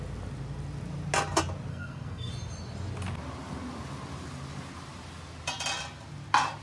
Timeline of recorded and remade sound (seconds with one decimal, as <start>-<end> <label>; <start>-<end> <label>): 0.0-1.7 recorded; 1.7-2.3 remade; 2.3-6.6 recorded

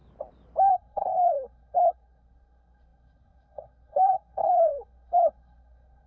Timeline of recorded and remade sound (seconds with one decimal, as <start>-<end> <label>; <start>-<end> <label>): 0.0-0.7 recorded; 0.7-6.1 remade

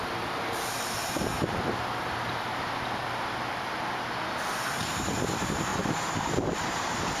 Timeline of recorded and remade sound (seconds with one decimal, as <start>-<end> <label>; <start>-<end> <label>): 0.0-1.0 remade; 1.0-5.3 recorded; 5.3-7.2 remade